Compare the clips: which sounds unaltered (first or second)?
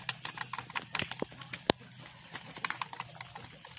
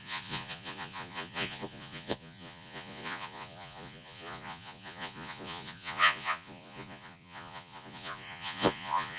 first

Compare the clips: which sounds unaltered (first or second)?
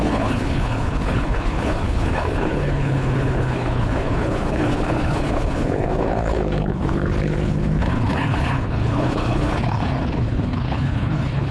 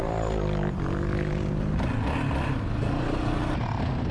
second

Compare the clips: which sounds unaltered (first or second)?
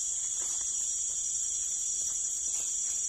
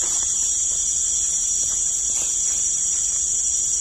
second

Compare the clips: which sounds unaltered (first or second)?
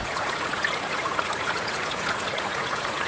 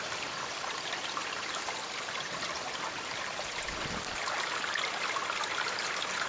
second